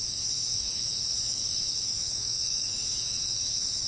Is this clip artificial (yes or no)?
yes